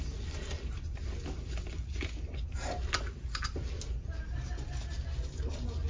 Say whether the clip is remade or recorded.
recorded